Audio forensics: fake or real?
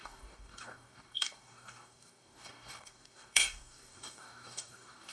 fake